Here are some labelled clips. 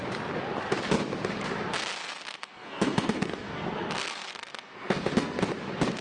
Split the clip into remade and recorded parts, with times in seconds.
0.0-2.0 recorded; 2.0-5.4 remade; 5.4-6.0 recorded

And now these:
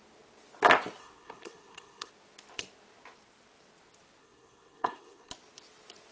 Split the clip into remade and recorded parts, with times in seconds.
0.0-1.0 recorded; 1.0-2.1 remade; 2.1-4.2 recorded; 4.2-5.3 remade; 5.3-6.1 recorded

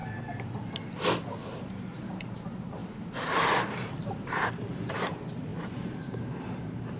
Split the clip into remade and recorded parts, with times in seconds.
0.0-1.2 recorded; 1.2-7.0 remade